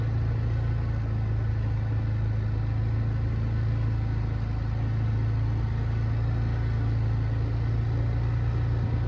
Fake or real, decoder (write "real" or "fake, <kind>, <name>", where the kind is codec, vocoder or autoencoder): real